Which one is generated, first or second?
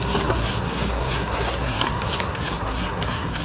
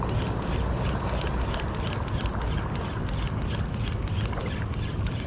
first